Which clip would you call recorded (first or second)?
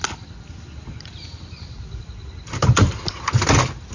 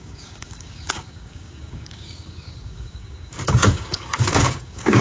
first